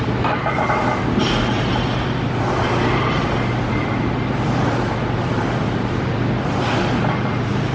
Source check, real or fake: fake